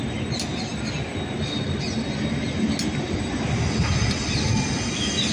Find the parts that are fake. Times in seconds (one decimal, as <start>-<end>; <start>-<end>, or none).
none